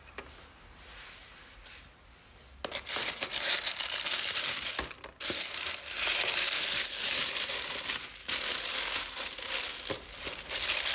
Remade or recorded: recorded